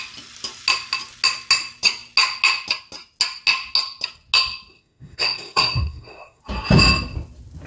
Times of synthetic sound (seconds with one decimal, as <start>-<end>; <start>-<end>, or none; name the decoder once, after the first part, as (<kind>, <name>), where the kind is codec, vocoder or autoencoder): 4.7-6.4 (codec, SNAC)